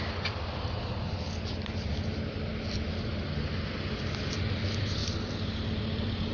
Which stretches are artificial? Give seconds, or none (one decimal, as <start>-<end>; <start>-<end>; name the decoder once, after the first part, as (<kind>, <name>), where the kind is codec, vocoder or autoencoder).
2.5-3.1 (vocoder, BigVGAN v2); 5.0-6.3